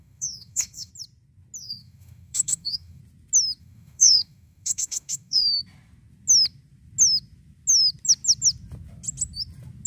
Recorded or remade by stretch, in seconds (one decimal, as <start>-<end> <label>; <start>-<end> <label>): 0.0-0.9 remade; 0.9-1.6 recorded; 1.6-3.0 remade; 3.0-3.6 recorded; 3.6-5.6 remade; 5.6-9.9 recorded